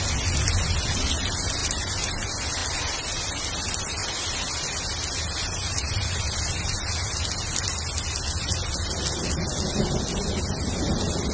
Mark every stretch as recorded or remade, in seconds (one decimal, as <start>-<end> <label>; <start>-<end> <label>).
0.0-1.6 recorded; 1.6-2.1 remade; 2.1-11.3 recorded